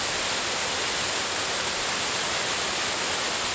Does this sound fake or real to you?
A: real